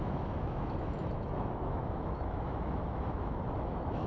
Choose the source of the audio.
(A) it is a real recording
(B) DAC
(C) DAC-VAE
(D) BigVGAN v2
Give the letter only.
C